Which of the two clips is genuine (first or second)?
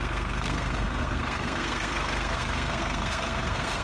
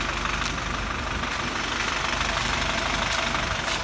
second